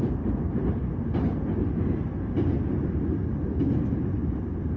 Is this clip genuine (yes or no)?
yes